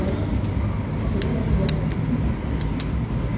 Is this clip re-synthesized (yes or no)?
no